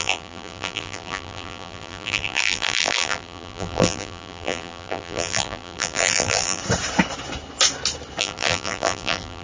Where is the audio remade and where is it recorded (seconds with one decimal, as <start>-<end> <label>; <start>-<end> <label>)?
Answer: 0.0-6.6 remade; 6.6-8.2 recorded; 8.2-9.4 remade